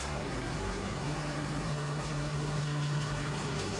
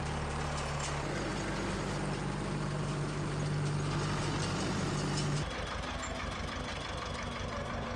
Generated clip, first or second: first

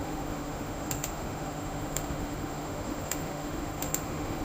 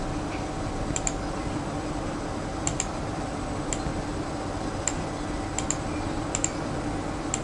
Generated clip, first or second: first